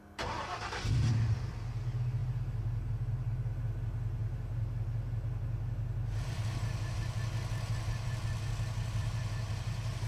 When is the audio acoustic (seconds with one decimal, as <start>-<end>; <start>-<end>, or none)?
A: 0.0-9.0